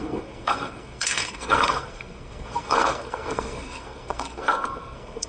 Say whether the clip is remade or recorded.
remade